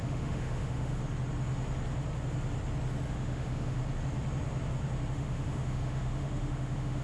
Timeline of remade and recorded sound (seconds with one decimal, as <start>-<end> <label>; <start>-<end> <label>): 0.0-1.0 remade; 1.0-3.1 recorded; 3.1-3.8 remade; 3.8-5.1 recorded; 5.1-7.0 remade